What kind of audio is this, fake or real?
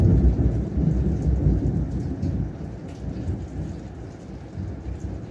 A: real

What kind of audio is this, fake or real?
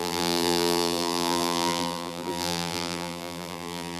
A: fake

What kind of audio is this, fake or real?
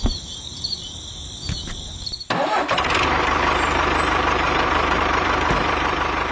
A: fake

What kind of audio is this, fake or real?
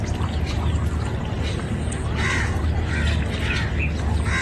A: real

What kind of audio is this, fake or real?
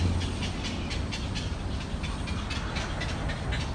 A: real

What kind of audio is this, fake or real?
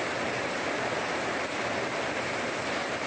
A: fake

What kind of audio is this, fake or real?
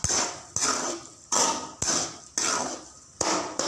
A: real